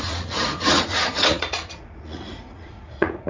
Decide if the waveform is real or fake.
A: fake